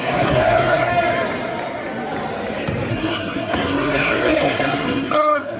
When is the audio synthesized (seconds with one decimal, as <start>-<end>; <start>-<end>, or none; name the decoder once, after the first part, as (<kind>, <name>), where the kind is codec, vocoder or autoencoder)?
0.0-0.9 (codec, SNAC); 2.9-5.6